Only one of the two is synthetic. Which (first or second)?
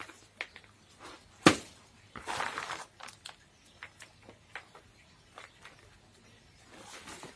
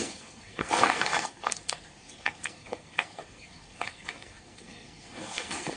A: second